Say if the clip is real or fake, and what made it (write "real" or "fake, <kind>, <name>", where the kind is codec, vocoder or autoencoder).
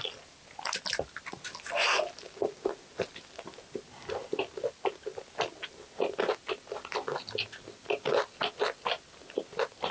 real